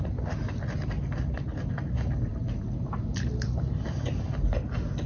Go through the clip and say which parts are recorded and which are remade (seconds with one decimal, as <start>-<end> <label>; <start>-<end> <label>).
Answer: 0.0-5.1 recorded